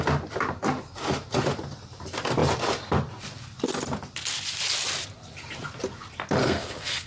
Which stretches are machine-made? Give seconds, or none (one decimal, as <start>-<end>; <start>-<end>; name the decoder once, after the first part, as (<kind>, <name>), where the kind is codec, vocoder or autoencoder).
6.4-7.1 (codec, SNAC)